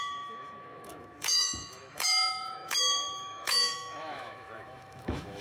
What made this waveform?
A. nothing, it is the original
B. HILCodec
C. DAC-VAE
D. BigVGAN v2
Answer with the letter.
C